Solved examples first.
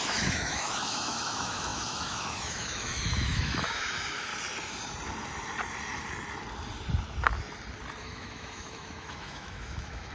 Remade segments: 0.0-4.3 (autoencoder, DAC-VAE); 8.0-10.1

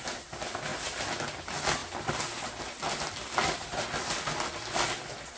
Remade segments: none

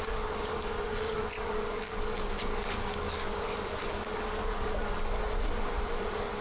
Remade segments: 0.0-5.2 (codec, DAC); 6.0-6.4

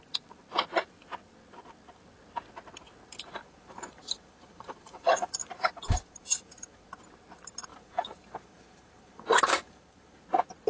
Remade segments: 3.4-6.8 (vocoder, BigVGAN v2); 7.7-10.2